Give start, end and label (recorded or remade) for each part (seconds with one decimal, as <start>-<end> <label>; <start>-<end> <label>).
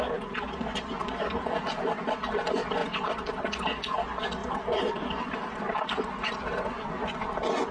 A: 0.0-2.8 recorded; 2.8-3.3 remade; 3.3-4.4 recorded; 4.4-5.2 remade; 5.2-7.7 recorded